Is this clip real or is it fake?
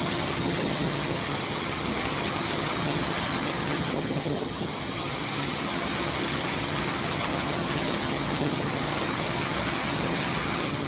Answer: fake